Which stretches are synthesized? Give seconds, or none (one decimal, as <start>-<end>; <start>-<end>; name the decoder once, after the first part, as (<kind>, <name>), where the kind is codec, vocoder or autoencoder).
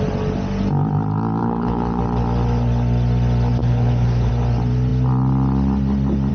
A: 1.4-2.0 (codec, HILCodec); 3.6-4.3